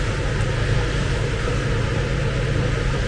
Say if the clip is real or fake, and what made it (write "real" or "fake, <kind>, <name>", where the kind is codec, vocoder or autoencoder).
real